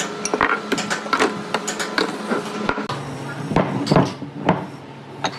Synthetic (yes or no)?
no